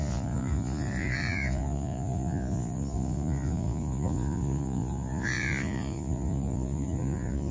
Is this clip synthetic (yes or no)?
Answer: yes